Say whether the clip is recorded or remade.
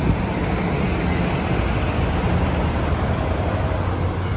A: recorded